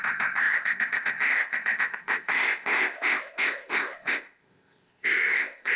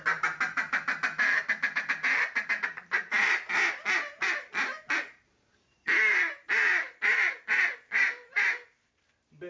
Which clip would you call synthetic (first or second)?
first